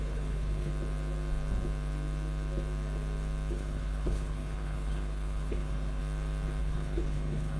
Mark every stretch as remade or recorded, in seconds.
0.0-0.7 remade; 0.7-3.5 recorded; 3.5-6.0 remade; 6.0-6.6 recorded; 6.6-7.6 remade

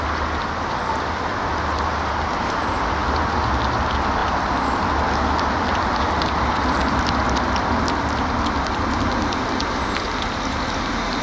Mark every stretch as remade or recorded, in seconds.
0.0-4.2 recorded; 4.2-8.8 remade; 8.8-11.2 recorded

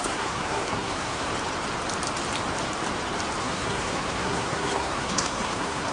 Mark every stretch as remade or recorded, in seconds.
0.0-1.3 remade; 1.3-3.4 recorded; 3.4-5.9 remade

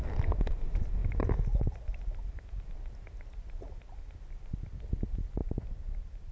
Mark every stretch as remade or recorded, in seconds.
0.0-5.4 recorded; 5.4-6.3 remade

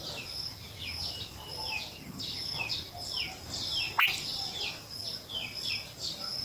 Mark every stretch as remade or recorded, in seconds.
0.0-6.4 recorded

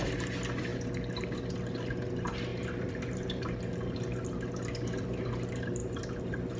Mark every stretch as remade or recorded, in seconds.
0.0-2.5 recorded; 2.5-4.5 remade; 4.5-5.8 recorded; 5.8-6.6 remade